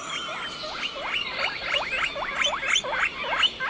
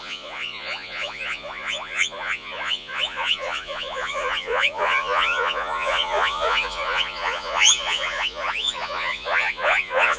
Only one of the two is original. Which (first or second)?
first